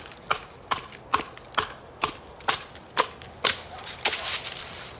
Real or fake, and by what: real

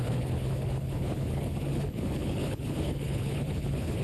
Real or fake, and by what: fake, codec, HILCodec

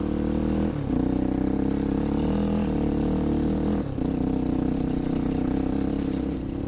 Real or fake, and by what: real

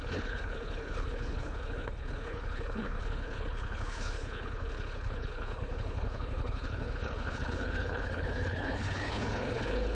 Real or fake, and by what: fake, codec, HILCodec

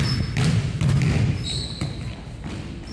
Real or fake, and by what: real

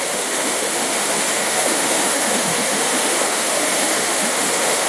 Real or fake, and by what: fake, autoencoder, DAC-VAE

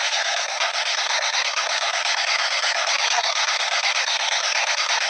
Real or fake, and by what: fake, codec, SNAC